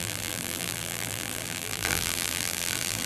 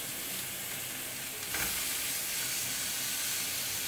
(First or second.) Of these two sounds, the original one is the second